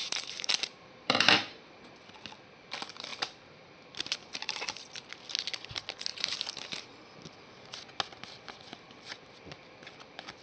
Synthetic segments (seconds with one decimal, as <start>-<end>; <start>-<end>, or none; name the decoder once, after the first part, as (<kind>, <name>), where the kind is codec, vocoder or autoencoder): 0.0-1.7 (vocoder, BigVGAN v2); 3.1-4.6; 6.1-6.8